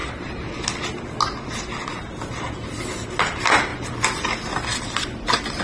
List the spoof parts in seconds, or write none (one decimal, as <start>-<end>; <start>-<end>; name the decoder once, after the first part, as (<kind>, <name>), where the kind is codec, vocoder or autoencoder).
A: 0.0-0.5 (vocoder, BigVGAN v2); 3.7-5.6